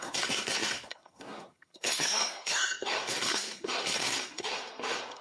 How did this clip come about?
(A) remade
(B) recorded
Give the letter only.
A